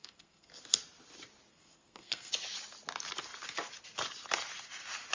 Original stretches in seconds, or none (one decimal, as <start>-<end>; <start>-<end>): 0.5-1.5; 2.3-5.1